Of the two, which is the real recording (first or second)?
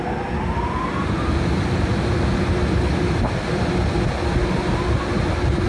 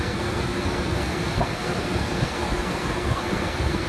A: first